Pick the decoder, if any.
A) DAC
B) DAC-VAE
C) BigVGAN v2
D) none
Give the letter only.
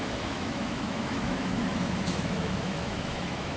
B